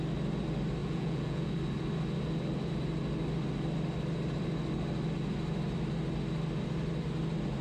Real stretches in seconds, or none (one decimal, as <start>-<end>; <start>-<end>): 0.0-0.8; 1.5-7.6